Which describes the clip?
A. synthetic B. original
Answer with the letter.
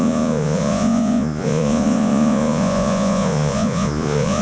A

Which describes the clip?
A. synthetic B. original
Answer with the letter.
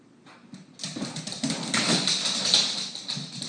B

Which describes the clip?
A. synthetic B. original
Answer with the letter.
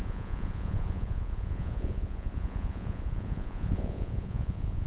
A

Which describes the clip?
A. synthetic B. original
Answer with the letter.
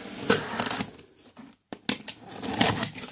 B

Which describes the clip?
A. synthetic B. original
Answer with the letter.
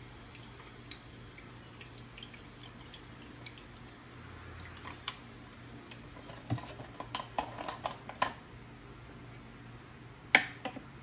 B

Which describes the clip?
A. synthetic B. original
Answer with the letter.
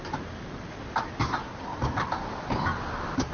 B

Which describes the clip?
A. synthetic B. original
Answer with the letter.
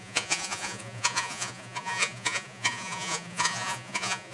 A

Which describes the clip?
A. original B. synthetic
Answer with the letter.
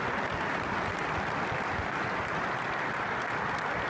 A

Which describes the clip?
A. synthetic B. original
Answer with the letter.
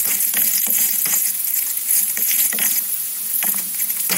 A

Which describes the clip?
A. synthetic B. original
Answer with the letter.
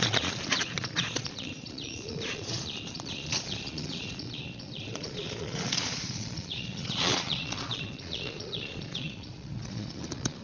A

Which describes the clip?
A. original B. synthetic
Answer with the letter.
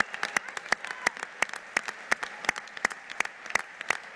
A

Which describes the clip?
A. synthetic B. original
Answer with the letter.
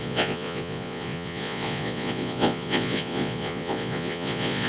A